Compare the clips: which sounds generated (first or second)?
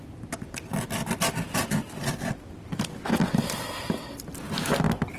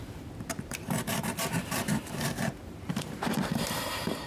second